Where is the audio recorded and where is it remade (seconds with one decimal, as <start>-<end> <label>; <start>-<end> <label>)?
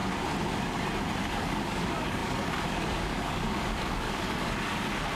0.0-1.2 recorded; 1.2-5.1 remade